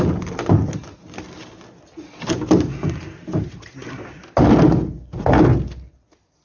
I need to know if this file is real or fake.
real